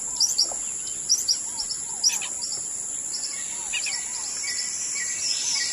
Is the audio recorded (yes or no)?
yes